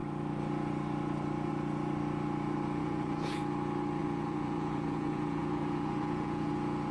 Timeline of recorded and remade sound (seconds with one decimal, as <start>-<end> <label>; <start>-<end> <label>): 0.0-2.8 recorded; 2.8-3.4 remade; 3.4-4.0 recorded; 4.0-6.5 remade; 6.5-6.9 recorded